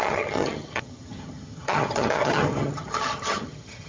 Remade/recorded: remade